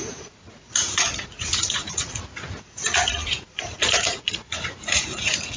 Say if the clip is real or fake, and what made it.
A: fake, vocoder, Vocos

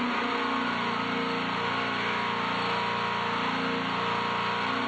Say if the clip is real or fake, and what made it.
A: real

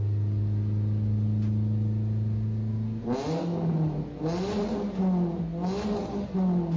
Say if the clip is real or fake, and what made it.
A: real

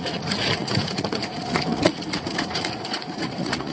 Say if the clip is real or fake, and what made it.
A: fake, vocoder, Vocos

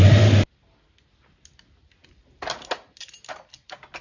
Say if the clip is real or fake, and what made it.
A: real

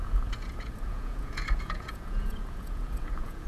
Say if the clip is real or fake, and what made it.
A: fake, vocoder, Vocos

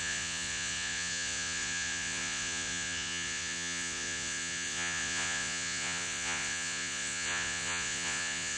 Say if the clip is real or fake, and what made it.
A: fake, vocoder, Vocos